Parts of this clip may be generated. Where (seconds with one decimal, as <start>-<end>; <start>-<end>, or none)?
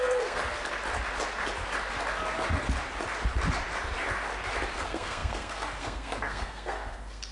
0.0-0.4; 4.8-7.3